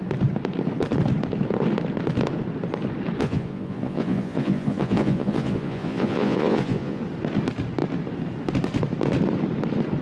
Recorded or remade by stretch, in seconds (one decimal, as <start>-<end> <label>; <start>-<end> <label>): 0.0-3.2 recorded; 3.2-7.0 remade; 7.0-10.0 recorded